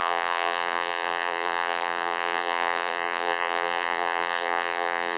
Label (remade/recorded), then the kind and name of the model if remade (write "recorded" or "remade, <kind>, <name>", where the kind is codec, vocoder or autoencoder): remade, vocoder, BigVGAN v2